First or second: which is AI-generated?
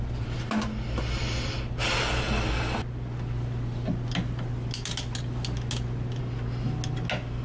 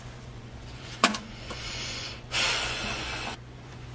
second